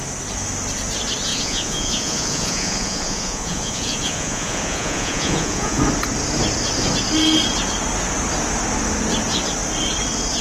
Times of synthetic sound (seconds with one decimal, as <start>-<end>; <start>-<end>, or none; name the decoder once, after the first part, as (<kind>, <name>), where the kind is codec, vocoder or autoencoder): 1.3-5.8 (vocoder, Vocos)